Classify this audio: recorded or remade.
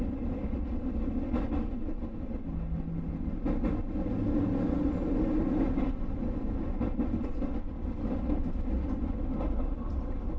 recorded